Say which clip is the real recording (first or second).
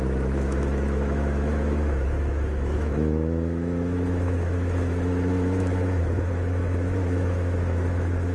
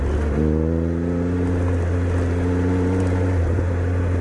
second